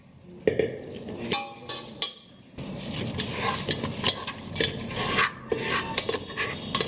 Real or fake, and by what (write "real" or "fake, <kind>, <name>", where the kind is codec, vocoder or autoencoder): real